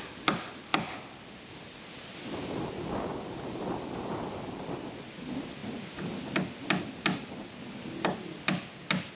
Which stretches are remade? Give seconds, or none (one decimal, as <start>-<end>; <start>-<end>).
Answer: none